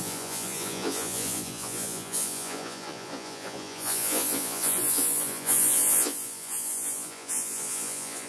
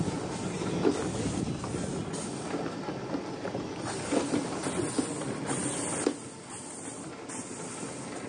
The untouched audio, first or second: second